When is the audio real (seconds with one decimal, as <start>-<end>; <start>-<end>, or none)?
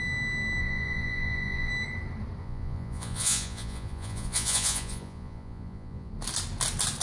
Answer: 0.0-0.6; 1.7-2.4; 6.1-7.0